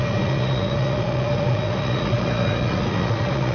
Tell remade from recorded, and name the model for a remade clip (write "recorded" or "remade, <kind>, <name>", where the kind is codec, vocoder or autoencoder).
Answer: remade, vocoder, Vocos